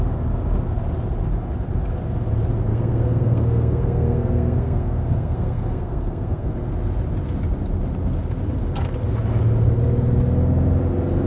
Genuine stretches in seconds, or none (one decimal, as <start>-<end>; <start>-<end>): 0.0-2.7; 6.5-11.3